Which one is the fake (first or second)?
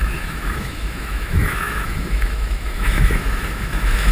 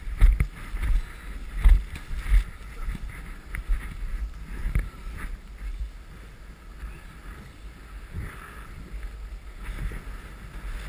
first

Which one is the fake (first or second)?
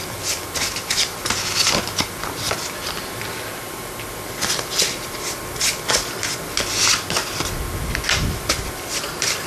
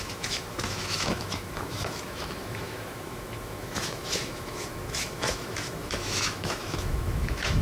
second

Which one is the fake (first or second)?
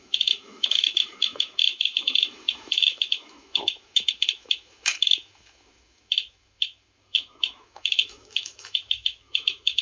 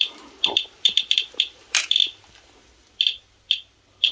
first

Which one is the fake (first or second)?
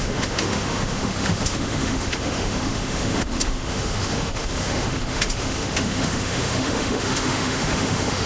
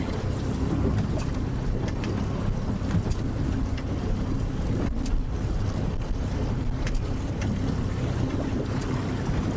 first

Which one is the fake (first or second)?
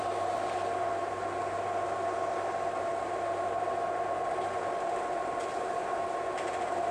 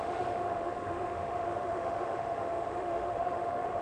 second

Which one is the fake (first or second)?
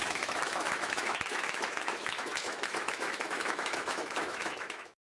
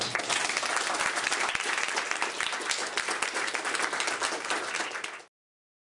first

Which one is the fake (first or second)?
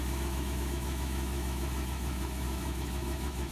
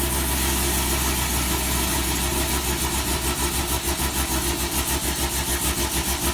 first